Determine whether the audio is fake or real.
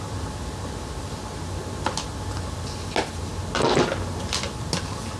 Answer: real